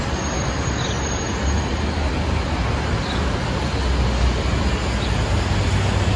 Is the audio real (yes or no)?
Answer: yes